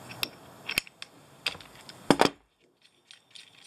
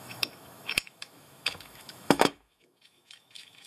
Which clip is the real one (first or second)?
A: first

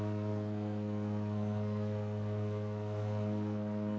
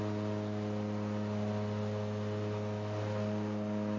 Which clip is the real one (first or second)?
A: second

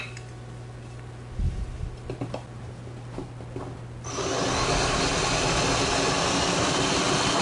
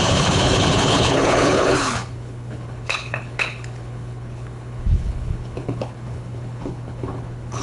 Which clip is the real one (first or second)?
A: first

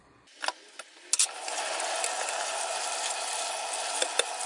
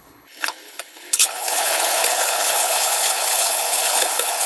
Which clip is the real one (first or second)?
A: first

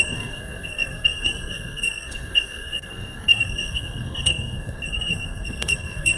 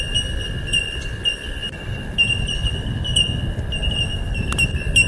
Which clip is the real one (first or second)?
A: second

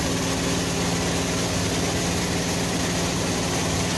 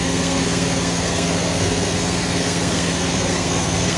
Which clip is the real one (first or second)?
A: first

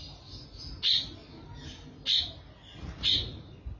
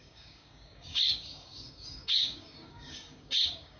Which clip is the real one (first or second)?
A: first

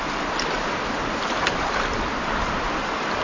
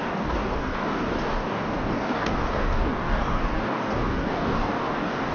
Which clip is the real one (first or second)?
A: first